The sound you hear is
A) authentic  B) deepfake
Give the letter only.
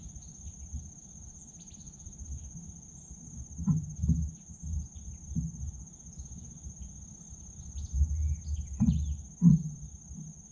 A